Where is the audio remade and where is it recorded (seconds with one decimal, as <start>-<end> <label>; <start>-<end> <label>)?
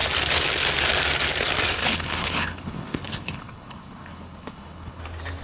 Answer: 0.0-1.8 recorded; 1.8-5.0 remade; 5.0-5.4 recorded